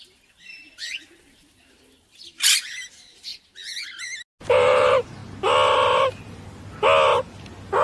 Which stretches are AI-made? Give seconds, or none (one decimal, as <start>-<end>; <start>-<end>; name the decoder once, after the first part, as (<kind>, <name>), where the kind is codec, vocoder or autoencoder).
0.0-0.6 (vocoder, BigVGAN v2); 2.9-3.3; 4.4-5.2